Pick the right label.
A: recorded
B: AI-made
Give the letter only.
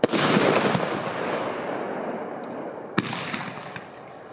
A